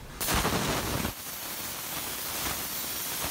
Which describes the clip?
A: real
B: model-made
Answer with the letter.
A